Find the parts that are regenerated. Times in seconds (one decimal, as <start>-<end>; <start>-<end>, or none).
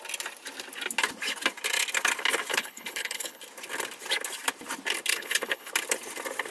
2.5-3.4; 5.1-5.7